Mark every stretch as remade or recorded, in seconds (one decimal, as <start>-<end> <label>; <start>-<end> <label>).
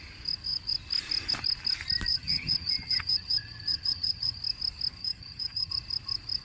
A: 0.0-2.1 recorded; 2.1-4.4 remade; 4.4-5.0 recorded; 5.0-5.7 remade; 5.7-6.4 recorded